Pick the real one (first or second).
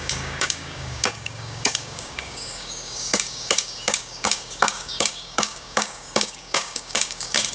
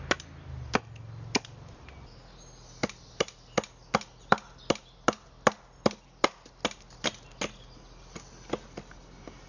second